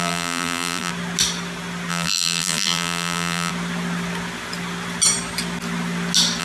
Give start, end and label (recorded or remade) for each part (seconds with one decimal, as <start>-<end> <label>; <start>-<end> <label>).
0.0-0.9 remade; 0.9-1.9 recorded; 1.9-3.5 remade; 3.5-6.4 recorded